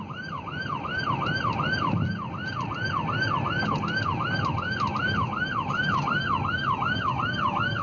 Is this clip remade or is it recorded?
recorded